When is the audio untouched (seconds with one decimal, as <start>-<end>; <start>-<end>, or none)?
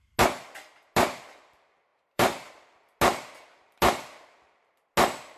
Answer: 0.0-1.9; 2.5-5.4